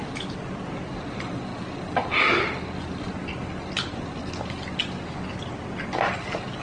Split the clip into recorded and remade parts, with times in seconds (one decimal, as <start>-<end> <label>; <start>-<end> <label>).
0.0-6.6 recorded